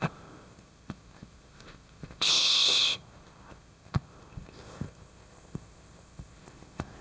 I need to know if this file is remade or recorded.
remade